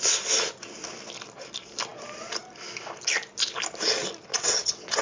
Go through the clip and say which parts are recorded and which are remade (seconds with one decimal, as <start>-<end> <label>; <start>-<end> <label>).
0.0-4.3 recorded; 4.3-5.0 remade